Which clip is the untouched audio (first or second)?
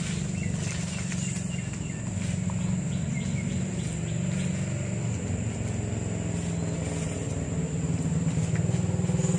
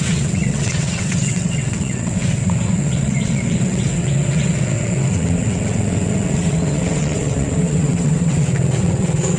first